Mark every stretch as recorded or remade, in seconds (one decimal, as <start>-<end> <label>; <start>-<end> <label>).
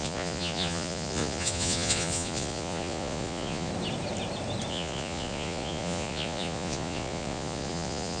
0.0-3.7 remade; 3.7-4.7 recorded; 4.7-8.2 remade